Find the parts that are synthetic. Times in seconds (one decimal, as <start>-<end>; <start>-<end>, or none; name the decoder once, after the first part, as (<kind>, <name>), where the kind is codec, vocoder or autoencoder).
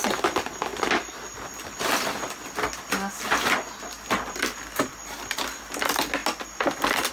none